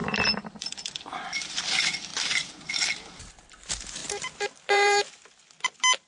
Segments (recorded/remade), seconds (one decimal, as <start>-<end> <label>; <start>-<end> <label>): 0.0-1.3 remade; 1.3-4.0 recorded; 4.0-5.1 remade; 5.1-6.1 recorded